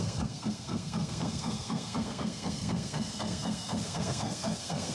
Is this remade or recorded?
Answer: remade